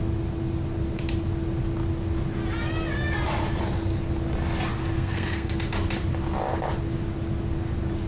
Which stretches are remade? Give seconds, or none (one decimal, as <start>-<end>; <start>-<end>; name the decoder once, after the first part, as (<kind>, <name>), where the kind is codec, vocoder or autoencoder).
4.8-5.5 (codec, SNAC)